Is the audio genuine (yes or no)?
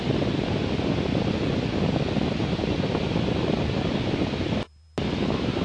yes